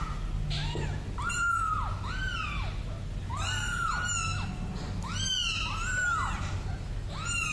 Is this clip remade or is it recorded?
recorded